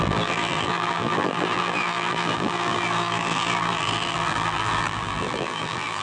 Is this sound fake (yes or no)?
yes